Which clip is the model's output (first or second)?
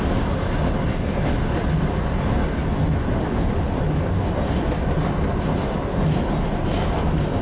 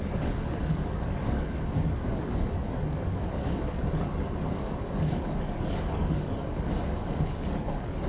second